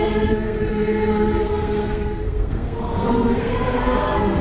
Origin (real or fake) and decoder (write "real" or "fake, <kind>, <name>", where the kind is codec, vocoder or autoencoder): fake, codec, SNAC